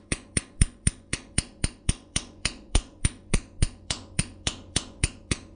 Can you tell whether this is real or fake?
fake